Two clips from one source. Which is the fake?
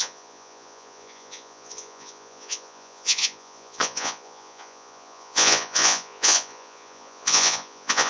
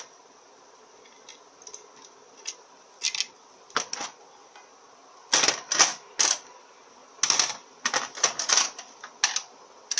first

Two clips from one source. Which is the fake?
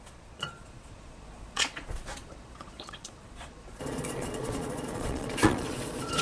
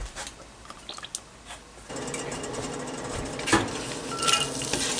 first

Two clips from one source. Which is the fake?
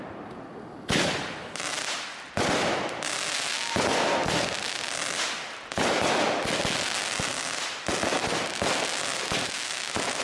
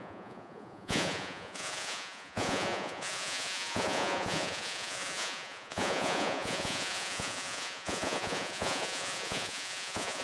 second